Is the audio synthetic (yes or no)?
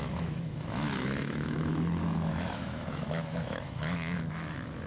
yes